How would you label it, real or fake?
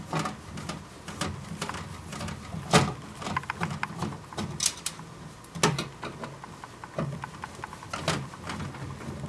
real